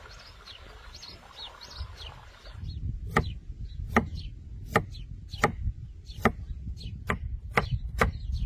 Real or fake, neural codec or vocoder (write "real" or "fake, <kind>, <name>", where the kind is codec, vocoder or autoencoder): real